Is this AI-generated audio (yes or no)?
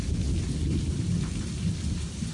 no